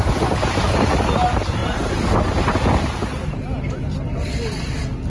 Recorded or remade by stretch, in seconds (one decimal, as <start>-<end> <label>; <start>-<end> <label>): 0.0-5.1 recorded